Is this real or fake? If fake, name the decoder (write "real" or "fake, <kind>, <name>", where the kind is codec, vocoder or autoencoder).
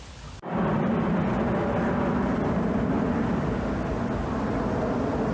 real